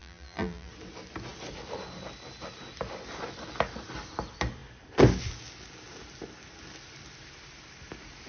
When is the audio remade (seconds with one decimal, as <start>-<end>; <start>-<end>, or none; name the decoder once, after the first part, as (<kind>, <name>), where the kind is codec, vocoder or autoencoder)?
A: 0.0-0.7 (vocoder, BigVGAN v2)